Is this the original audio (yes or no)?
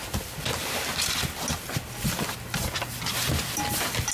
yes